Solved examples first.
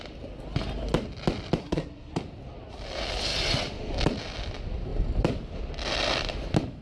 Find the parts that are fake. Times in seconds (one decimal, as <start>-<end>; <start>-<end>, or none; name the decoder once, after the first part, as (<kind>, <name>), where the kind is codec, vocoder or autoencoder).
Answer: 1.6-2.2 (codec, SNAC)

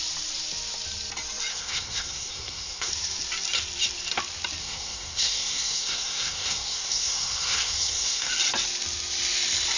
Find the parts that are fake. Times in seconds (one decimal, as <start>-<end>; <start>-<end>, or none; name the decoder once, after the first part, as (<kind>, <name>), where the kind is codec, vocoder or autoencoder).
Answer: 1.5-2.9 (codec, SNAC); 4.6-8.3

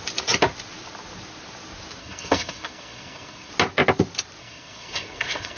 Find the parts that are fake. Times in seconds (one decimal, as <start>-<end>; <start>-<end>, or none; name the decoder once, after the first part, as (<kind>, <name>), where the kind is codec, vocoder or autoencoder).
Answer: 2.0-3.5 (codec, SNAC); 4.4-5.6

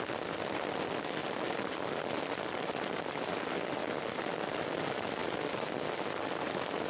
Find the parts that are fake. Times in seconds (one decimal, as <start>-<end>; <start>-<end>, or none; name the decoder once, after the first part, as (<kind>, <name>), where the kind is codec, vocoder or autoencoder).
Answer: none

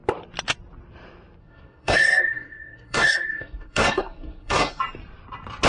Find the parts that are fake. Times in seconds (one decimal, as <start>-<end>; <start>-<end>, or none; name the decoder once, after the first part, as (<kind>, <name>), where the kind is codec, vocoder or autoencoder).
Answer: 1.4-4.8 (codec, SNAC)